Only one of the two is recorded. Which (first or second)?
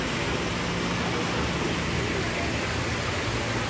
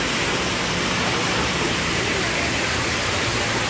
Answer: first